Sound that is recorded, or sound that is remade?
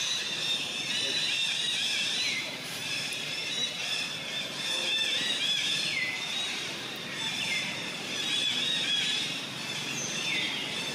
remade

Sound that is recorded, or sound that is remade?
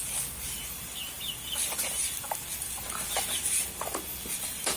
recorded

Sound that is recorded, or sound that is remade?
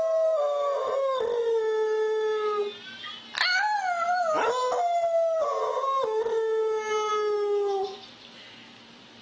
recorded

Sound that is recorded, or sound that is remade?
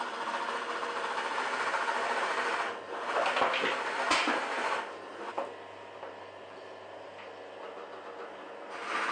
recorded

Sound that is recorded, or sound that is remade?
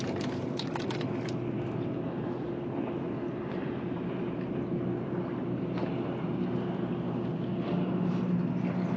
recorded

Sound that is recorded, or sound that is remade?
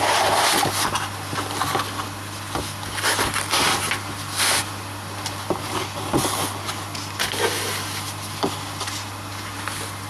recorded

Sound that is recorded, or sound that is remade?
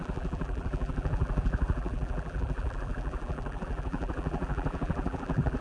remade